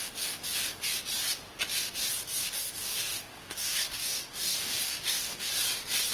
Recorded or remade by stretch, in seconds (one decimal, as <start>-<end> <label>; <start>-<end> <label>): 0.0-0.9 remade; 0.9-2.4 recorded; 2.4-5.5 remade; 5.5-6.1 recorded